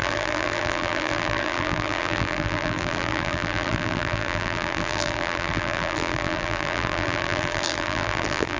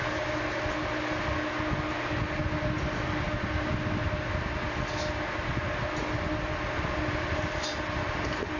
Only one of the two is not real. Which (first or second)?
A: first